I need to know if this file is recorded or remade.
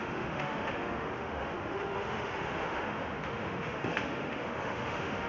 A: remade